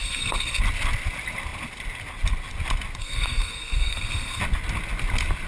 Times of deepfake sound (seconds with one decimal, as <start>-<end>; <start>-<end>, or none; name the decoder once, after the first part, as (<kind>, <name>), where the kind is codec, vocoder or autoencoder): 0.0-0.6 (codec, SNAC); 3.0-4.4